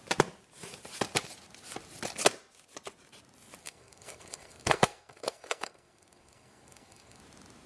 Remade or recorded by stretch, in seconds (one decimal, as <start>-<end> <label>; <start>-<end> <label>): 0.0-3.6 recorded; 3.6-7.2 remade; 7.2-7.7 recorded